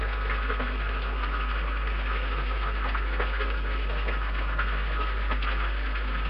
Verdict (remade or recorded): remade